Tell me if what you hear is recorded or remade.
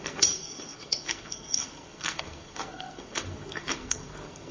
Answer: remade